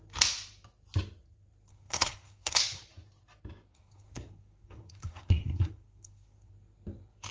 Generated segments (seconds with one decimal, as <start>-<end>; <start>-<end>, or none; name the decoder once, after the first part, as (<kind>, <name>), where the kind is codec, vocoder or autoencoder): 1.7-2.6 (codec, SNAC); 3.7-6.5